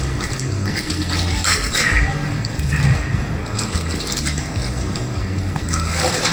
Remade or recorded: remade